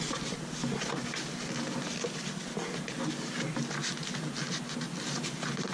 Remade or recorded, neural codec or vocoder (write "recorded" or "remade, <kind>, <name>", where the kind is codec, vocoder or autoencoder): recorded